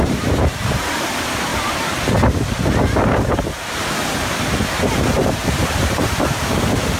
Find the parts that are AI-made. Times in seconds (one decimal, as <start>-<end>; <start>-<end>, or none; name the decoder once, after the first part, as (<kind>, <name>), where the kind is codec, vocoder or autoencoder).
0.0-1.5 (vocoder, BigVGAN v2); 3.0-7.0